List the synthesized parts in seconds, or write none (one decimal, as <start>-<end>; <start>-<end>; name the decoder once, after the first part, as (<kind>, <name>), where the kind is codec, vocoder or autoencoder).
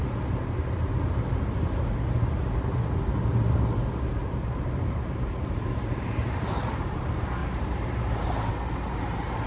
4.2-4.7 (vocoder, BigVGAN v2); 6.2-7.0; 7.4-8.5